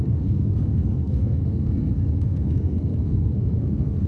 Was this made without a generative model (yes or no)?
no